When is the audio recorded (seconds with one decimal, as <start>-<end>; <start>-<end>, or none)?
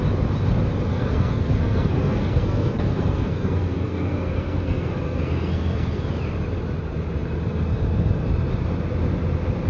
0.0-0.9; 6.0-9.7